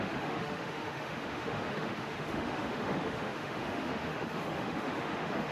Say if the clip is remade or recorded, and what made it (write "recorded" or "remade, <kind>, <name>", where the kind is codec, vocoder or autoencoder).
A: remade, autoencoder, DAC-VAE